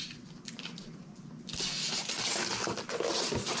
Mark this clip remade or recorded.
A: recorded